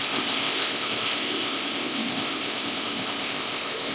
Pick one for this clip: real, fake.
fake